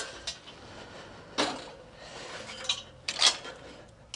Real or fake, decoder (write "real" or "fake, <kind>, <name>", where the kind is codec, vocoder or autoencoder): real